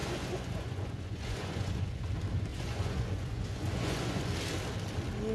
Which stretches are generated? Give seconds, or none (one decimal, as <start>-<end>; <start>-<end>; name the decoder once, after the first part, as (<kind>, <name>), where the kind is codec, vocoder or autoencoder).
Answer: 0.0-2.1 (vocoder, Vocos); 2.5-4.3

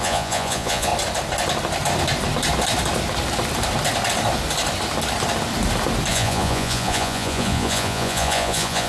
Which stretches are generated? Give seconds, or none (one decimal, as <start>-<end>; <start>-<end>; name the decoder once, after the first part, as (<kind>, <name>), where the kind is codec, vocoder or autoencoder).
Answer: 0.0-0.9 (vocoder, Vocos); 6.1-8.9

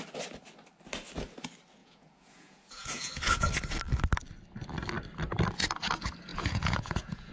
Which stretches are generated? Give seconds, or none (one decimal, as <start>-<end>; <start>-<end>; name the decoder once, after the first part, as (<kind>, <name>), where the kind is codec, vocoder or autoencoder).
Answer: 1.8-3.5 (vocoder, Vocos); 6.3-7.3